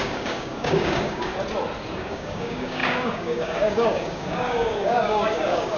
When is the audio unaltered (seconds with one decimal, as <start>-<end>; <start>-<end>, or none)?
1.3-1.9